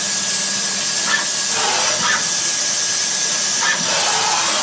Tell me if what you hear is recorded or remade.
recorded